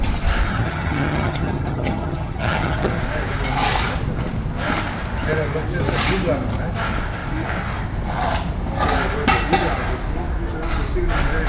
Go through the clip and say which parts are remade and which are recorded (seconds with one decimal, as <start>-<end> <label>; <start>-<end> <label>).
0.0-0.5 recorded; 0.5-3.0 remade; 3.0-11.5 recorded